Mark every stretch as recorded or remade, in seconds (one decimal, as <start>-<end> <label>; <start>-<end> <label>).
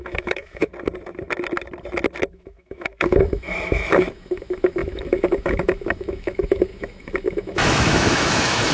0.0-0.7 remade; 0.7-2.3 recorded; 2.3-8.7 remade